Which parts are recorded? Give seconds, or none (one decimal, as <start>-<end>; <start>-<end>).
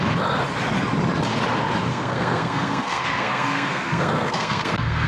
0.0-1.9